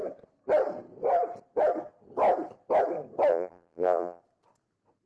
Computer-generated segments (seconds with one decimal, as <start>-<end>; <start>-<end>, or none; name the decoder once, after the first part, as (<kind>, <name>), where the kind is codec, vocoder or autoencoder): 3.3-4.2 (vocoder, BigVGAN v2)

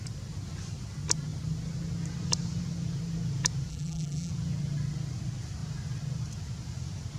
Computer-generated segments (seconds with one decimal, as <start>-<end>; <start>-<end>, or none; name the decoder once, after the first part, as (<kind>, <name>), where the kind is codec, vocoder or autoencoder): 3.7-4.3 (vocoder, BigVGAN v2)

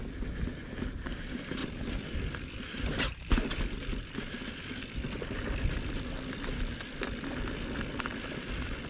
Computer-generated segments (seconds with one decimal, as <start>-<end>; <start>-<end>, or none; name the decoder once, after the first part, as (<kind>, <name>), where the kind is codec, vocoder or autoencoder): 1.6-3.3 (vocoder, BigVGAN v2)

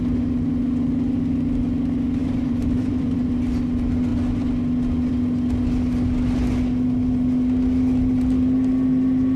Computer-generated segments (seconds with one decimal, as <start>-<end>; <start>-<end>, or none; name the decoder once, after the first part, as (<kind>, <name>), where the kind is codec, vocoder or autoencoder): 2.2-3.3 (vocoder, BigVGAN v2)

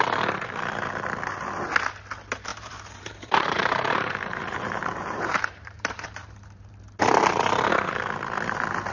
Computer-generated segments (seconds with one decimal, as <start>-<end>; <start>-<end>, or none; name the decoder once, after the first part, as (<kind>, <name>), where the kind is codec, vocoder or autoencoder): 2.5-6.7 (vocoder, BigVGAN v2)

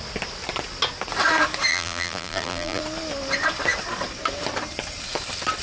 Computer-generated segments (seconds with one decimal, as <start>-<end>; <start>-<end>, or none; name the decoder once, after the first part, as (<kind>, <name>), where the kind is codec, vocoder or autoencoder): 1.7-2.8 (vocoder, BigVGAN v2)

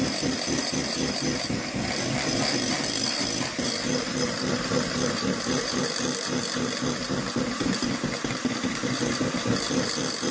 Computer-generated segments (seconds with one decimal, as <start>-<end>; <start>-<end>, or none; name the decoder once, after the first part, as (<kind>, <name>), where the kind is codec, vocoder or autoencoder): none

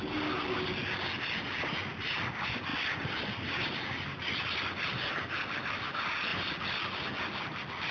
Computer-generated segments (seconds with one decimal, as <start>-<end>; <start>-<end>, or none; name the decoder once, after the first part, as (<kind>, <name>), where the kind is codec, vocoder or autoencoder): 2.7-5.1 (vocoder, BigVGAN v2)